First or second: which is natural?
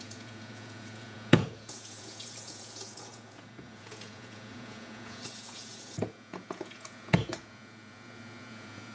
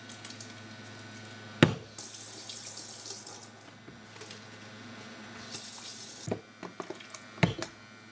second